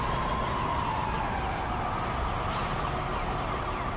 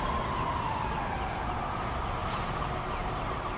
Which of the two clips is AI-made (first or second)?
second